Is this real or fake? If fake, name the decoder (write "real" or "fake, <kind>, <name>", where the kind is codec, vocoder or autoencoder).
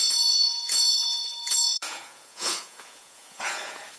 fake, vocoder, Vocos